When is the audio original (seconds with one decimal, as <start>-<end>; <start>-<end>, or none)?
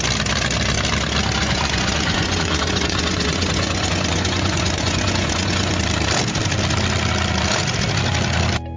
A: 0.0-1.4; 5.8-8.8